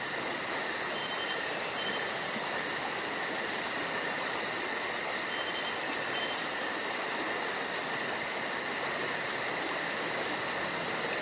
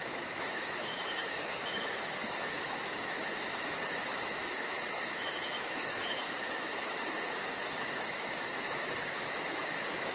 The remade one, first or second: second